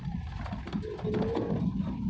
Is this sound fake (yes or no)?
no